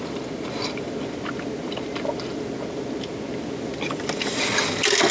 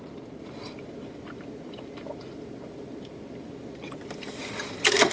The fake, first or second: second